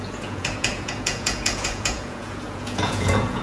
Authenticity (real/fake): fake